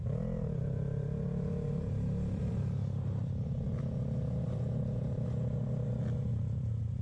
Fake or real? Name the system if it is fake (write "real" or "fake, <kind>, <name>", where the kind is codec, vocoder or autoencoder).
fake, vocoder, BigVGAN v2